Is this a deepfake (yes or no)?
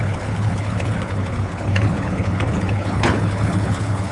yes